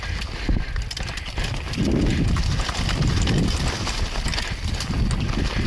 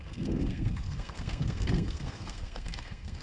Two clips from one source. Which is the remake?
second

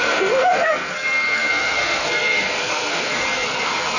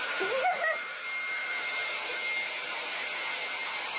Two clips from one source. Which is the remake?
first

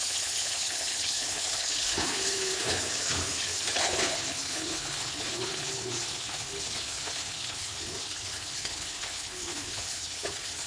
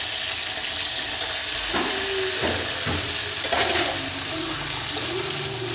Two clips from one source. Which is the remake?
first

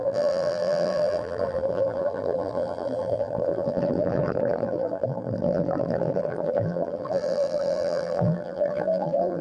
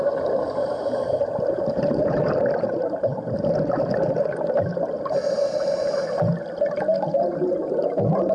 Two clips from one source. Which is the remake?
first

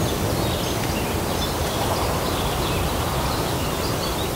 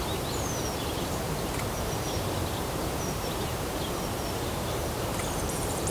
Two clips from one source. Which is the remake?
second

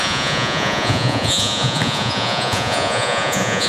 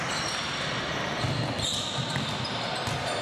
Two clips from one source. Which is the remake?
first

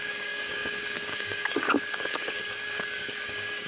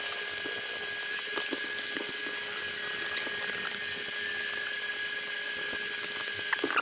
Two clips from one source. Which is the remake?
first